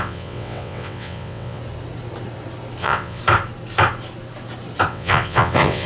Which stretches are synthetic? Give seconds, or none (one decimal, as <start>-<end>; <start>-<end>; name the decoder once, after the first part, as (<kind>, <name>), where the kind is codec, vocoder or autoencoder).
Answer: 0.0-1.6 (vocoder, WaveNeXt); 2.8-3.2; 4.9-5.9